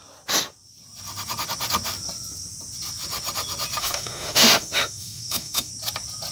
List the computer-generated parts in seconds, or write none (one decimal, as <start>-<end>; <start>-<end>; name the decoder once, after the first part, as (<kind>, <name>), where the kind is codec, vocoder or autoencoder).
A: 3.8-5.7 (autoencoder, DAC-VAE)